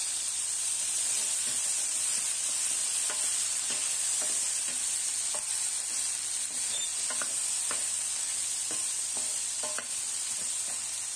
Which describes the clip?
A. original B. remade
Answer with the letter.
A